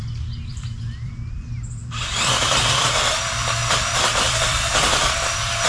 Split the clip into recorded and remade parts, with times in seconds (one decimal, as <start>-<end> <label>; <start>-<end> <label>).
0.0-0.5 recorded; 0.5-1.1 remade; 1.1-1.8 recorded; 1.8-5.2 remade; 5.2-5.7 recorded